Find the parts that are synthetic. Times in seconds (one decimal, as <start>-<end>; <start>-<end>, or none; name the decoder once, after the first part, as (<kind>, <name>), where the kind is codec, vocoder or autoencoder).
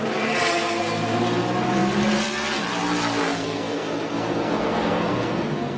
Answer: 3.2-5.8 (codec, SNAC)